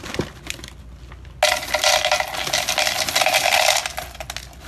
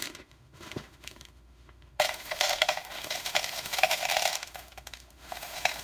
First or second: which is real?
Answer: first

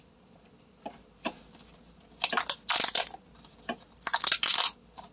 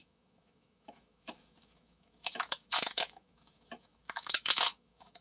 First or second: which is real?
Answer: first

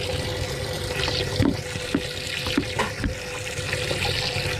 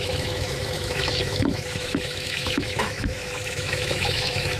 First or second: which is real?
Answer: first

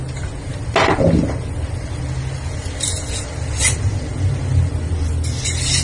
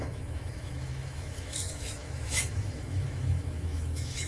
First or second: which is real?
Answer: first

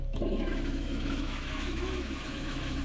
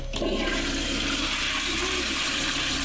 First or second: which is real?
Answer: second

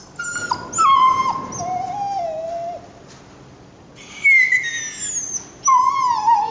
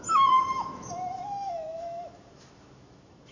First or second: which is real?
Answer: first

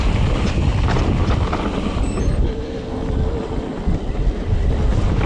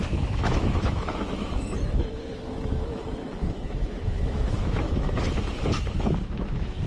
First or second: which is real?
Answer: first